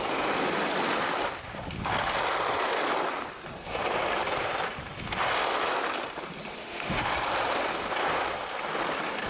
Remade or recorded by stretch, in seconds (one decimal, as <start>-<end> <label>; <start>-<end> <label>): 0.0-6.6 recorded; 6.6-7.1 remade; 7.1-9.3 recorded